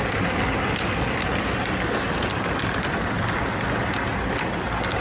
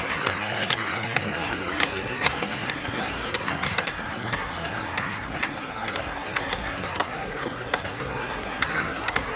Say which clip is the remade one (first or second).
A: second